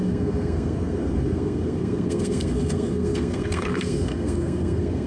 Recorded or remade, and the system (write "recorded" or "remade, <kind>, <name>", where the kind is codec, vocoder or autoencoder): remade, codec, SNAC